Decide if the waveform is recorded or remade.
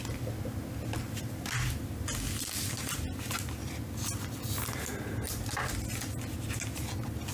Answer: recorded